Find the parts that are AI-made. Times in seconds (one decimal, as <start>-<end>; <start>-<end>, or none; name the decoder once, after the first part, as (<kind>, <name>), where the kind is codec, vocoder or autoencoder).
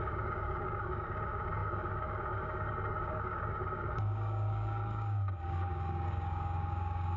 0.0-7.2 (codec, DAC)